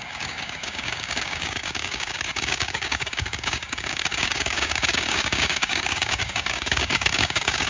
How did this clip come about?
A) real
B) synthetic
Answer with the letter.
B